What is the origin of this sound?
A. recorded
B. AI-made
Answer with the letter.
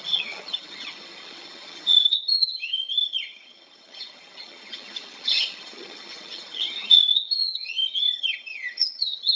B